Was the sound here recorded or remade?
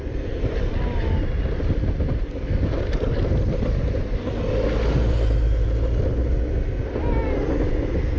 recorded